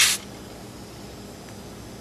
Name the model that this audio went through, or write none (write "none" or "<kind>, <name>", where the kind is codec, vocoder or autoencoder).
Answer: none